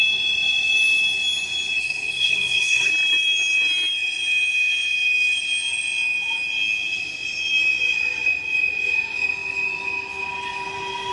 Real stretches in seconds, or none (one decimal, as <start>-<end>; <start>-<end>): 0.0-1.8; 2.9-11.1